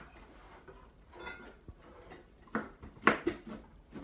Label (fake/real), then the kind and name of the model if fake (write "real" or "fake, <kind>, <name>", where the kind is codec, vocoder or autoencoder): real